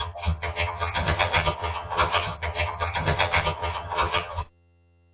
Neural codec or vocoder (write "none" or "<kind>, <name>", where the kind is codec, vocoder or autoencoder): vocoder, HiFi-GAN